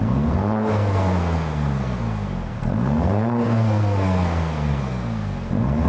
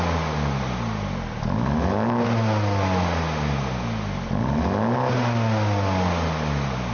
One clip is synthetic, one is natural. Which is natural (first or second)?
second